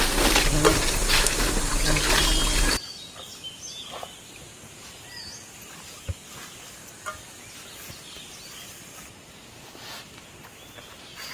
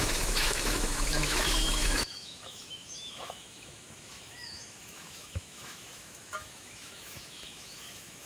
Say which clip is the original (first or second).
first